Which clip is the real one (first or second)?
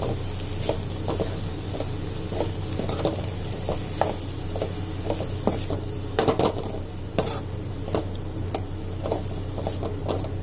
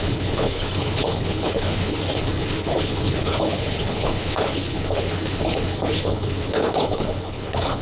first